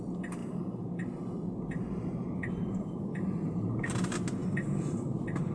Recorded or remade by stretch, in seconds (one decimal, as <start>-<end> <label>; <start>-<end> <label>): 0.0-0.4 recorded; 0.4-3.7 remade; 3.7-4.4 recorded; 4.4-5.1 remade; 5.1-5.5 recorded